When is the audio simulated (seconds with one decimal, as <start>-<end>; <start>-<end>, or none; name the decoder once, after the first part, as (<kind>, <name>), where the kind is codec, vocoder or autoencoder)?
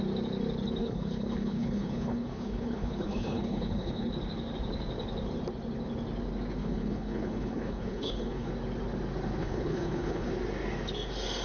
0.8-4.1 (codec, HILCodec); 6.6-8.5; 9.4-10.3